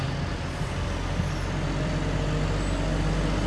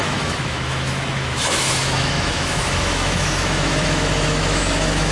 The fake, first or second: second